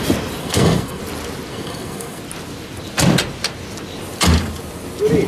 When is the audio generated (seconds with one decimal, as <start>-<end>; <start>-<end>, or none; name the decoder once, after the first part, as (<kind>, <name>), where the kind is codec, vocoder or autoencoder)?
0.4-1.0 (codec, SNAC); 1.5-2.2